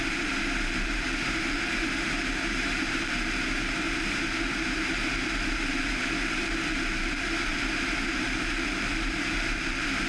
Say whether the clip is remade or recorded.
remade